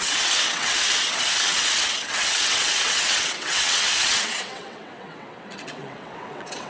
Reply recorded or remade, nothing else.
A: remade